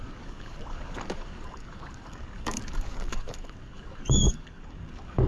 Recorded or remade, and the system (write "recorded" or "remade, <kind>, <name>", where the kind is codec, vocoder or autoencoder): remade, codec, DAC